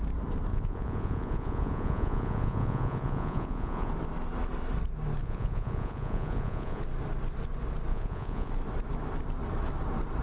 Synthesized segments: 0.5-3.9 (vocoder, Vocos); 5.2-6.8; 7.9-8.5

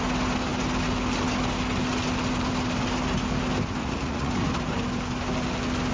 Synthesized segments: 3.8-4.3 (vocoder, Vocos)

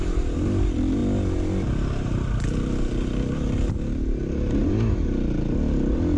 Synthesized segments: none

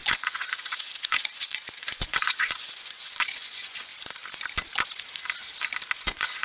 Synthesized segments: 0.0-3.9 (vocoder, Vocos); 6.0-6.4

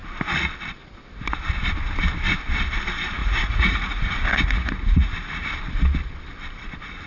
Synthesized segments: 3.2-5.1 (vocoder, Vocos)

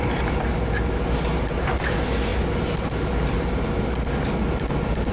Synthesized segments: none

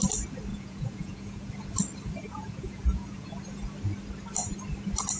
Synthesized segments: 0.5-1.5 (vocoder, Vocos); 2.2-3.4